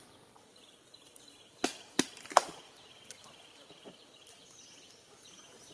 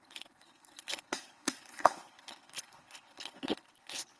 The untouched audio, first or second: first